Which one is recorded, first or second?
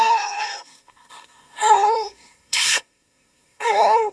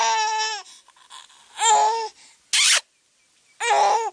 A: second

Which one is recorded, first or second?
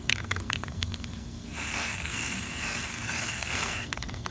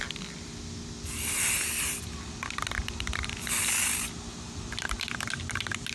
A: second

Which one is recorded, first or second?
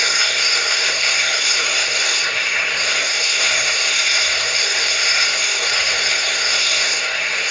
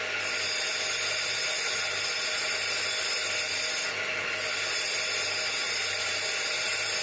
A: second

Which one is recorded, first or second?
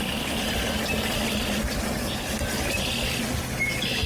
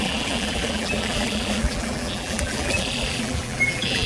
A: first